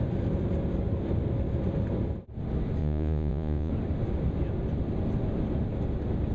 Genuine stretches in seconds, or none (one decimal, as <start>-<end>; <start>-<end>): 0.0-2.8; 3.7-6.3

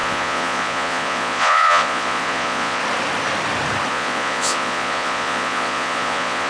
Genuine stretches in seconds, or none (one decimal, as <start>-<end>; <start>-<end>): 2.8-3.9